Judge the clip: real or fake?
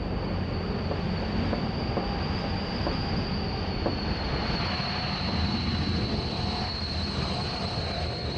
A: real